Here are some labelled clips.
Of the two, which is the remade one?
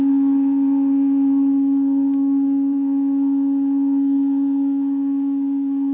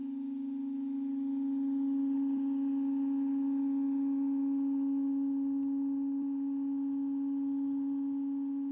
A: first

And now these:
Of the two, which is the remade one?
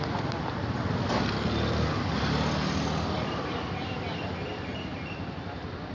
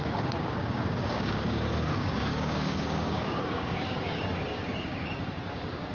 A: second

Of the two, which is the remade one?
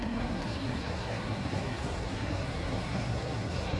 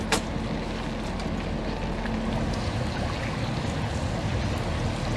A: first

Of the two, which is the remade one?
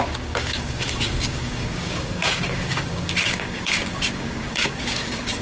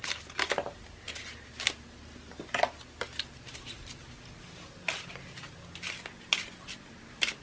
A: first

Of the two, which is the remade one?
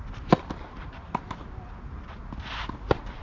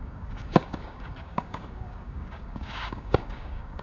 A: second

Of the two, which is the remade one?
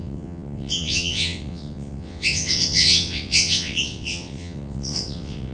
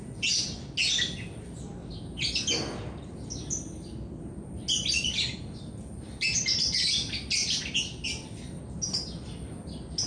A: first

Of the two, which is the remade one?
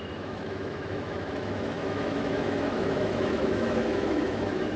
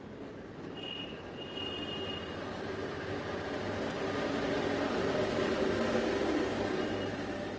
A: first